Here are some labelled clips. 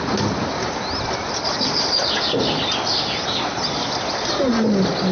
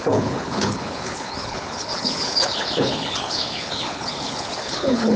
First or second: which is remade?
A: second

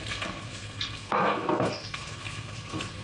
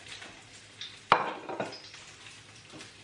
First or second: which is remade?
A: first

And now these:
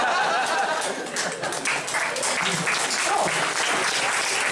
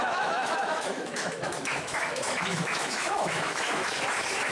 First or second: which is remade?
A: second